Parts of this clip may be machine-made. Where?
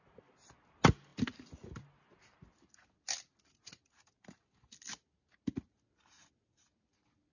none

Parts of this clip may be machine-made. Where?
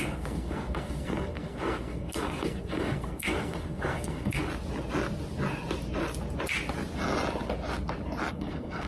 0.0-4.5 (codec, SNAC); 8.3-8.9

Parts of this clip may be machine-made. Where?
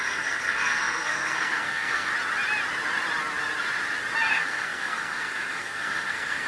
0.0-2.1 (codec, SNAC); 4.3-6.5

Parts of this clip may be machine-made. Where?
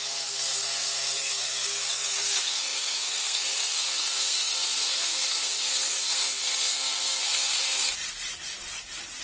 0.0-7.9 (codec, SNAC)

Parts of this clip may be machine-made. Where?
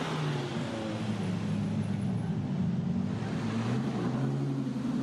none